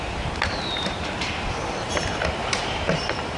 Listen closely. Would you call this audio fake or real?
fake